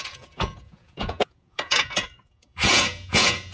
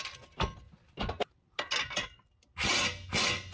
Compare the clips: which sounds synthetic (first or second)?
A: first